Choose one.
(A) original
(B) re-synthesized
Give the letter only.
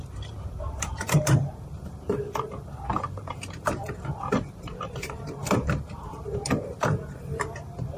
B